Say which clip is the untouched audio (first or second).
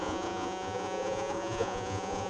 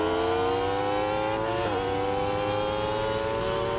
second